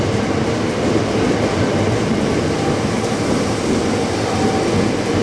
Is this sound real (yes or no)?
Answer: yes